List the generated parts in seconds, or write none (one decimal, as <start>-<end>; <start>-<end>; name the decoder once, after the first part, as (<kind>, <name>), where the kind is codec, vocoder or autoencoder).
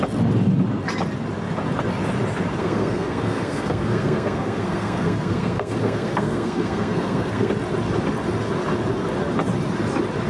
2.6-7.5 (codec, SNAC)